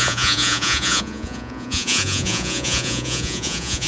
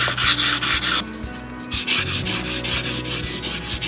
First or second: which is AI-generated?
first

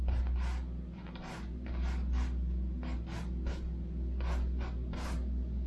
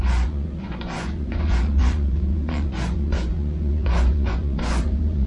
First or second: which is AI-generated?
second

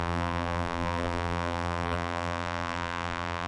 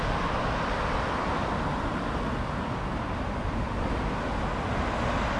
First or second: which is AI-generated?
first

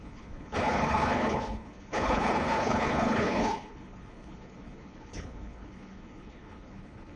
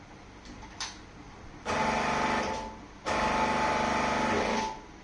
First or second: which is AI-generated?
first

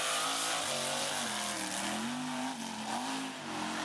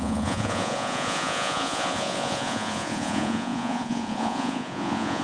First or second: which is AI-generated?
second